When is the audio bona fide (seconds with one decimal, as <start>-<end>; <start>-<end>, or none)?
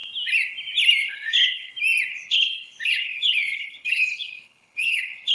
0.0-1.0; 1.7-2.1